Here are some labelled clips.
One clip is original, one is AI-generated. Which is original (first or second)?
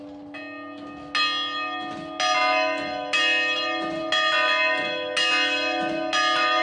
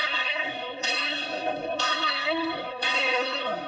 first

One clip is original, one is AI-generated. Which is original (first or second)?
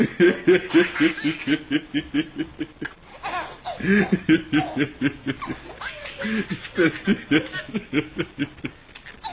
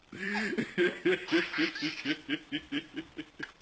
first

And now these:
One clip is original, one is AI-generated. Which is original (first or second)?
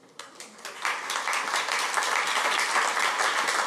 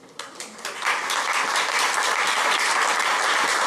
first